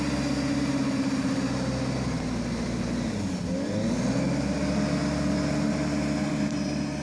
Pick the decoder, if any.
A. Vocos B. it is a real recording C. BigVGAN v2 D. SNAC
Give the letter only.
B